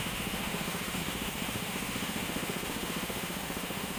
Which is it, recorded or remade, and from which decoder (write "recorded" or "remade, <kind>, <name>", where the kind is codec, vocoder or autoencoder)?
remade, autoencoder, DAC-VAE